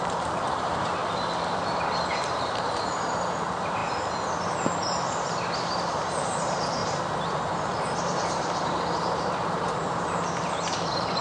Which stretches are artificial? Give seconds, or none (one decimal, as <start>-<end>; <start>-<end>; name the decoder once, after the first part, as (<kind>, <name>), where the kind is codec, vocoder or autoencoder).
0.0-1.0 (vocoder, BigVGAN v2); 2.2-3.8; 5.9-6.8; 9.0-11.2